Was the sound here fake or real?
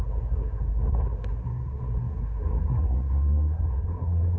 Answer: fake